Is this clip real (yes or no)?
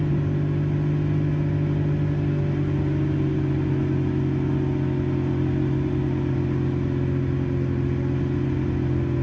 yes